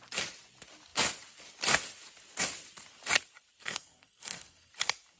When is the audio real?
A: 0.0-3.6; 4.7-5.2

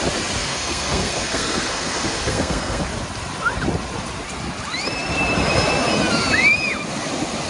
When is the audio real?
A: 0.0-0.4; 2.8-7.5

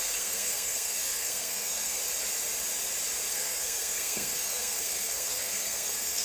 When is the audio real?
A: 2.0-3.3

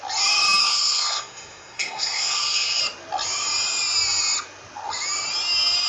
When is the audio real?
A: 0.0-0.6; 2.8-5.9

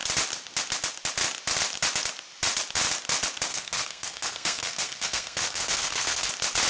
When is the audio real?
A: 0.0-3.5; 6.3-6.7